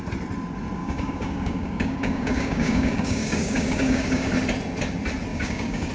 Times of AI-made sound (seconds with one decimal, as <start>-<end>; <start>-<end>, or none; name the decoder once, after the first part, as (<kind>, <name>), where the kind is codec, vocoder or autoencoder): 0.8-4.3 (codec, DAC); 5.3-5.9